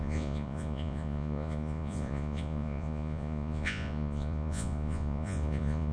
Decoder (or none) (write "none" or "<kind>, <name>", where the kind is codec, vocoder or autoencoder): vocoder, Vocos